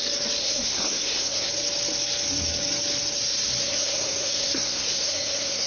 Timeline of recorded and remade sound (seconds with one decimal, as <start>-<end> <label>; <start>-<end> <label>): 0.0-0.4 recorded; 0.4-1.5 remade; 1.5-3.6 recorded; 3.6-5.7 remade

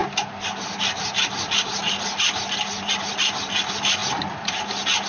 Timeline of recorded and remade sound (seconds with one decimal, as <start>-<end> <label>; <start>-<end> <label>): 0.0-5.1 recorded

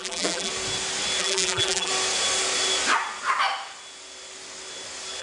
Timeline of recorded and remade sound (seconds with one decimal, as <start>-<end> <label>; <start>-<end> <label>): 0.0-0.5 remade; 0.5-1.2 recorded; 1.2-1.9 remade; 1.9-5.2 recorded

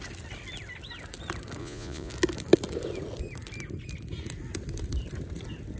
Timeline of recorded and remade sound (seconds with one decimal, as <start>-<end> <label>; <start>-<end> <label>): 0.0-1.6 recorded; 1.6-2.1 remade; 2.1-5.8 recorded

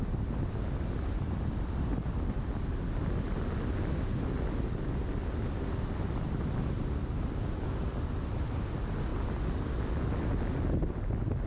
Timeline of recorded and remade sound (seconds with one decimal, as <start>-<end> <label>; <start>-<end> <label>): 0.0-11.5 recorded